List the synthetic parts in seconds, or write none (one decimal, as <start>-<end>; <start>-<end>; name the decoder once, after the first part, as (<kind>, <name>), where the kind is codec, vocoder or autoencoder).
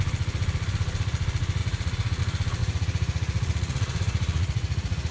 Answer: 1.6-2.2 (vocoder, Vocos); 2.6-5.1